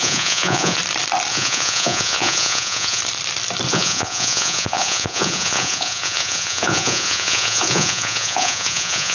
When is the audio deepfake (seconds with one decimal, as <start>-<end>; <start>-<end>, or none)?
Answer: 0.0-0.8; 1.3-3.0; 3.7-9.1